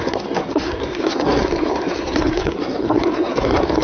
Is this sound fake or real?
fake